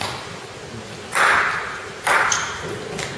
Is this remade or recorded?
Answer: recorded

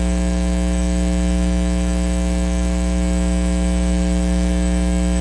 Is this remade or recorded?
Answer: remade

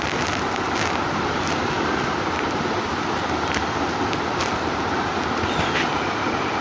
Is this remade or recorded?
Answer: recorded